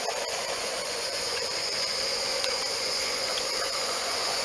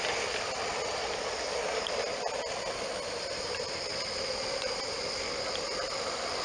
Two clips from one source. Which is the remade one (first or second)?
first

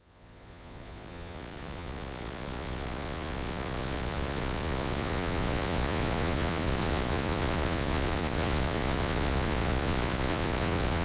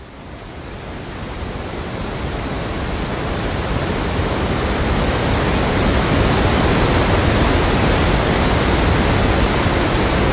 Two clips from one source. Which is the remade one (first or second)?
first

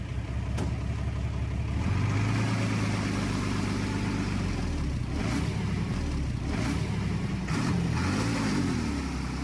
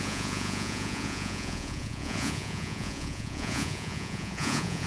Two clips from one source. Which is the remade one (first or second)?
second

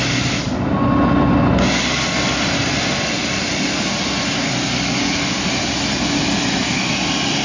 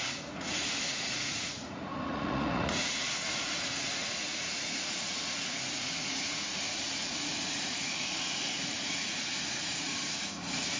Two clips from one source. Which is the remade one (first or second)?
second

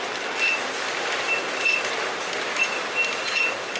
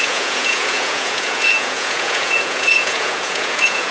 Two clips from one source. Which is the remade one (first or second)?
second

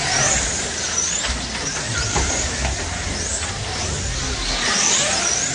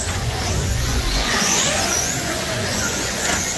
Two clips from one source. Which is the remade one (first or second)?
second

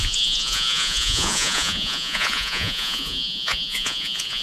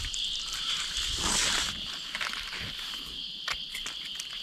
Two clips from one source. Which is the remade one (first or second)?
first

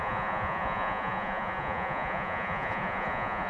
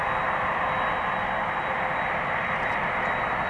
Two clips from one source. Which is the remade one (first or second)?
first